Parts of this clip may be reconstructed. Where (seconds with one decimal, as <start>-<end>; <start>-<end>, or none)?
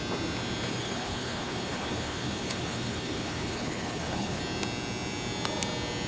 0.7-4.4